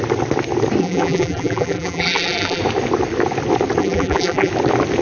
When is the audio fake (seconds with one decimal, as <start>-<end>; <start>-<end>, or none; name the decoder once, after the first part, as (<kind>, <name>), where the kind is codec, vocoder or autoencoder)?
0.8-2.6 (vocoder, BigVGAN v2); 3.8-4.5